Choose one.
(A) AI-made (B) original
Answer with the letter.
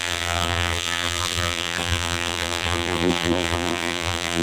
A